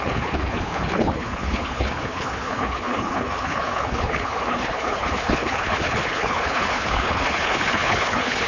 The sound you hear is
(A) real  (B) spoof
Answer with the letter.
B